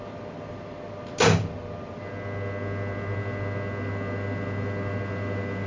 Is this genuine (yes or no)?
yes